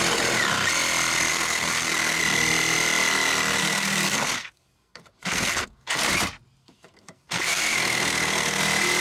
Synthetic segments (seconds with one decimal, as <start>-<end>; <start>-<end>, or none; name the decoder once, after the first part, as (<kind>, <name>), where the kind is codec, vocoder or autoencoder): 1.3-2.2 (codec, SNAC); 3.6-6.0; 6.6-8.6